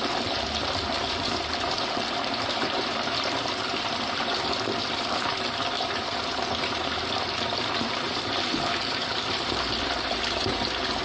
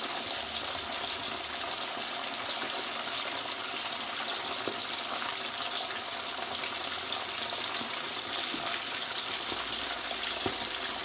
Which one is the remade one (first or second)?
first